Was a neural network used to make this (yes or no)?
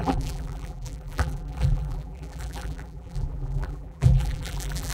yes